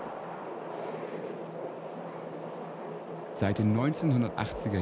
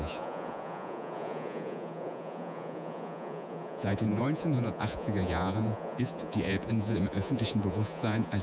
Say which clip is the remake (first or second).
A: second